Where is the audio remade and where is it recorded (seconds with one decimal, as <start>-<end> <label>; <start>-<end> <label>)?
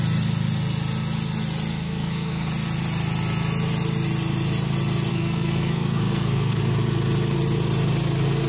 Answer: 0.0-1.7 recorded; 1.7-2.5 remade; 2.5-5.1 recorded; 5.1-6.6 remade; 6.6-8.5 recorded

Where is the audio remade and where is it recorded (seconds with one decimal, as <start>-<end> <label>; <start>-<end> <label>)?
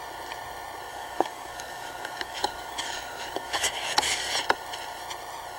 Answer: 0.0-0.9 recorded; 0.9-4.3 remade; 4.3-5.6 recorded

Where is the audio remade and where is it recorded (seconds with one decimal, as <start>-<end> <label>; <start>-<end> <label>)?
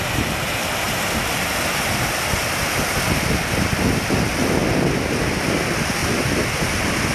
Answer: 0.0-0.6 recorded; 0.6-1.6 remade; 1.6-4.6 recorded; 4.6-5.4 remade; 5.4-6.0 recorded; 6.0-6.6 remade; 6.6-7.1 recorded